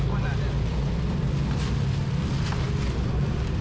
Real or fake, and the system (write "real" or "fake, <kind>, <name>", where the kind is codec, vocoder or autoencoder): real